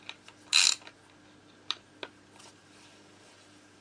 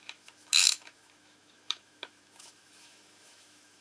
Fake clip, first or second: second